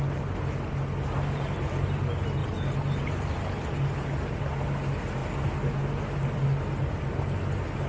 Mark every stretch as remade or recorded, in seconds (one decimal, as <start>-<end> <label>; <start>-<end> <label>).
0.0-7.9 recorded